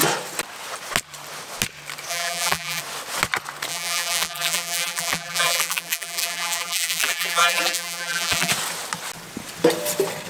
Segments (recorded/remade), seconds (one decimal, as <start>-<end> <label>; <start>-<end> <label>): 0.0-2.1 recorded; 2.1-2.8 remade; 2.8-3.7 recorded; 3.7-8.5 remade; 8.5-10.3 recorded